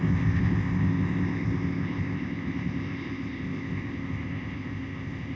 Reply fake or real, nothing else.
fake